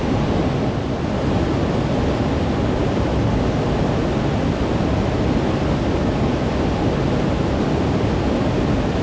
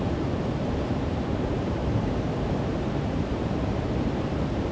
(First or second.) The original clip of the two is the first